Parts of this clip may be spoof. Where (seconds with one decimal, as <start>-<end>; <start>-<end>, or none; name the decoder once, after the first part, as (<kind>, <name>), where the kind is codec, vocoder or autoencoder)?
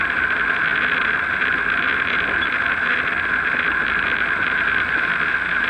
none